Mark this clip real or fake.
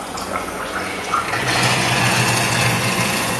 fake